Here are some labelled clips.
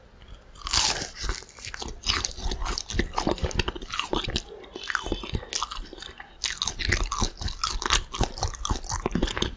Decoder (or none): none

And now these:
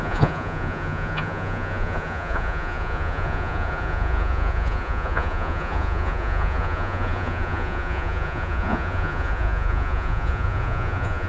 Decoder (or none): vocoder, Vocos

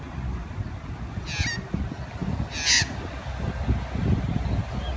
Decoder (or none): none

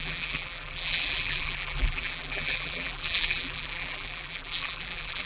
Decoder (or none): vocoder, BigVGAN v2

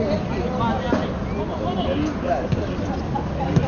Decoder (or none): none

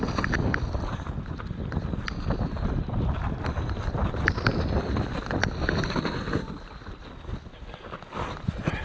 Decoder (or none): none